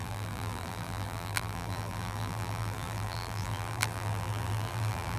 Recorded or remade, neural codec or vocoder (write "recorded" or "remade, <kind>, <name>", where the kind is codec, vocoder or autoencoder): remade, vocoder, BigVGAN v2